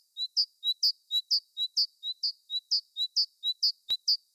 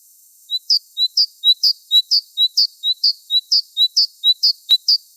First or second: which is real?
first